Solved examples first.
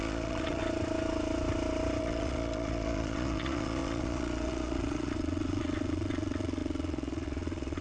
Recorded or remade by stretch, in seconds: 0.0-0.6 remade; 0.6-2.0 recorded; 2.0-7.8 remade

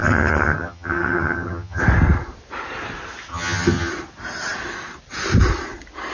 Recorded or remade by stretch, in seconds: 0.0-1.8 remade; 1.8-3.3 recorded; 3.3-3.9 remade; 3.9-6.1 recorded

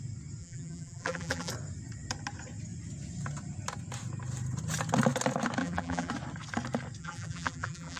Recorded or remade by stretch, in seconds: 0.0-0.4 recorded; 0.4-1.5 remade; 1.5-5.6 recorded; 5.6-6.1 remade; 6.1-7.0 recorded; 7.0-8.0 remade

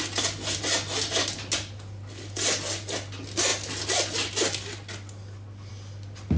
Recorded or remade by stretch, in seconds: 0.0-6.4 recorded

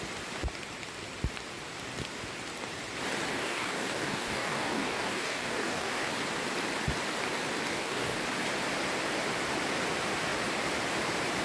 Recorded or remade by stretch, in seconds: 0.0-3.3 recorded; 3.3-6.1 remade; 6.1-7.7 recorded; 7.7-8.2 remade; 8.2-11.4 recorded

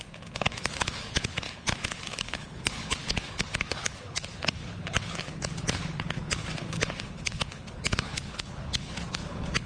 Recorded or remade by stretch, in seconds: 0.0-9.7 remade

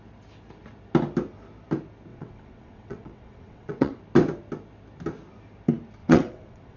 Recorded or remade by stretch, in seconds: 0.0-2.1 recorded; 2.1-4.0 remade; 4.0-6.0 recorded; 6.0-6.8 remade

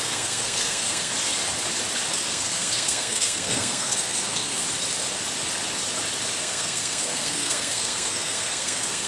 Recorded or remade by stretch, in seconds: 0.0-1.1 remade; 1.1-2.1 recorded; 2.1-4.6 remade; 4.6-6.4 recorded; 6.4-9.1 remade